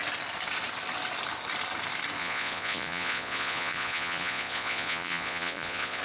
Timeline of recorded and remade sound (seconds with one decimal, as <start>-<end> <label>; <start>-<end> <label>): 0.0-2.2 recorded; 2.2-6.0 remade